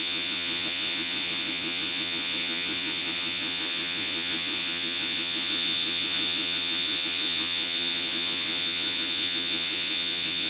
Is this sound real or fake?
fake